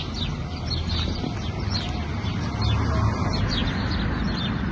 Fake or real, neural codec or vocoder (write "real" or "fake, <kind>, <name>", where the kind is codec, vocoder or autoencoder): real